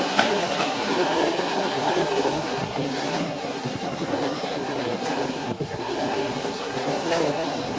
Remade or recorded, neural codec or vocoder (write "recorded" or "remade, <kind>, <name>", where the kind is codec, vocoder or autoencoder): remade, codec, SNAC